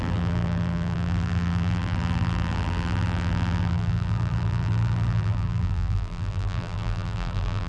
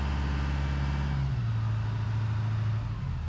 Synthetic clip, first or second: first